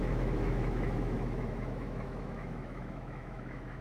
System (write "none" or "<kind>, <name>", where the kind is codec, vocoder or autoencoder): autoencoder, DAC-VAE